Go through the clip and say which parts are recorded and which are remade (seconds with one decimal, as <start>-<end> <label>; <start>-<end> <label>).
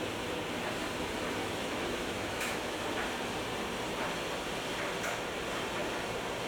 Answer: 0.0-1.4 recorded; 1.4-2.8 remade; 2.8-6.5 recorded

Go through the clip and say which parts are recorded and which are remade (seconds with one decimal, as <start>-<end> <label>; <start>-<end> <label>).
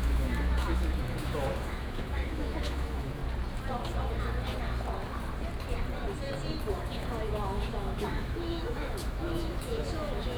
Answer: 0.0-3.2 remade; 3.2-6.7 recorded; 6.7-10.4 remade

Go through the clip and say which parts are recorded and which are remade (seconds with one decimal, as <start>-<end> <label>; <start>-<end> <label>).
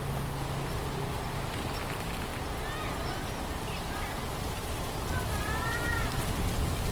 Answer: 0.0-6.9 recorded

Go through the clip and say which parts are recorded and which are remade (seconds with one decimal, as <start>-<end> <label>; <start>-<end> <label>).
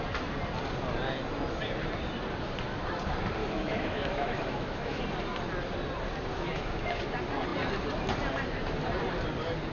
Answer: 0.0-3.4 recorded; 3.4-5.0 remade; 5.0-6.3 recorded; 6.3-7.0 remade; 7.0-9.7 recorded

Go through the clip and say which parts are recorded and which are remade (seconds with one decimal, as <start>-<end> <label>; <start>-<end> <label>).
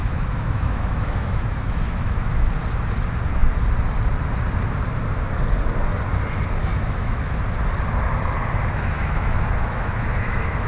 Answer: 0.0-2.5 remade; 2.5-6.6 recorded; 6.6-7.2 remade; 7.2-8.6 recorded; 8.6-10.7 remade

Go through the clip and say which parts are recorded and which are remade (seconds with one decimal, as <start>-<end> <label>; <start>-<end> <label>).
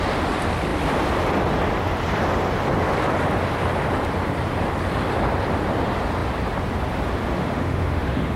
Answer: 0.0-7.4 recorded; 7.4-8.4 remade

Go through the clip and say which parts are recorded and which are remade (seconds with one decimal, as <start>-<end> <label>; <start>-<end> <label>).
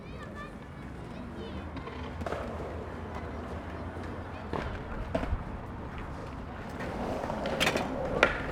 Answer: 0.0-8.5 recorded